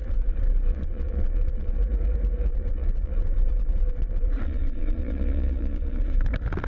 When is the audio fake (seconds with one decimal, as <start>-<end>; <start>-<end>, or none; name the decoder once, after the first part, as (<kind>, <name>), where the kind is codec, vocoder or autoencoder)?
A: 0.0-1.8 (vocoder, Vocos); 2.5-6.3

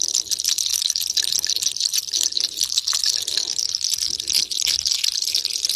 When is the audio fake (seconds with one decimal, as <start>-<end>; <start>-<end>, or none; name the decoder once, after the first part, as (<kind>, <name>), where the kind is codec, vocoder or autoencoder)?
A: none

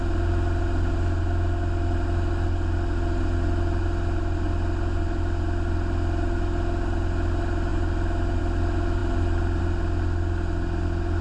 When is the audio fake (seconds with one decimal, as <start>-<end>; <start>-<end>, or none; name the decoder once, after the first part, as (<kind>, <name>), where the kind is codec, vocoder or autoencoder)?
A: none

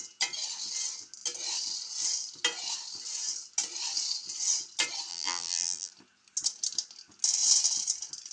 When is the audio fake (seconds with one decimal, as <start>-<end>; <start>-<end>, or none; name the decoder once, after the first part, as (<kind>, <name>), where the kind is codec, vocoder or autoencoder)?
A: 5.1-5.9 (vocoder, BigVGAN v2)

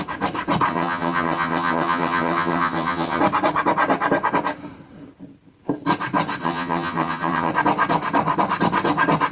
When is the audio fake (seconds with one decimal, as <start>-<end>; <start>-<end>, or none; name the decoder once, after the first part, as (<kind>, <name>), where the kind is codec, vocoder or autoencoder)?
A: 0.7-3.2 (vocoder, HiFi-GAN); 6.4-7.5

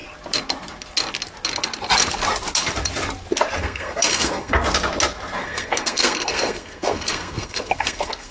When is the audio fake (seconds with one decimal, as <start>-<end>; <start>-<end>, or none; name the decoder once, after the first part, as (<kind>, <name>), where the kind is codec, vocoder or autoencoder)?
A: 3.6-4.6 (codec, SNAC); 5.4-8.3